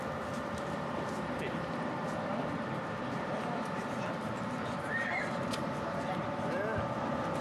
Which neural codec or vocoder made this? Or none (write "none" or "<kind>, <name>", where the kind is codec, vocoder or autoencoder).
none